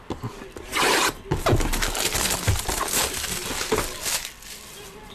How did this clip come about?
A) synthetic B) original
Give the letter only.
B